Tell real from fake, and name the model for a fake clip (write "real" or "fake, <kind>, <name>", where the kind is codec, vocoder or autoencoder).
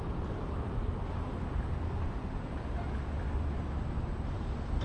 fake, vocoder, BigVGAN v2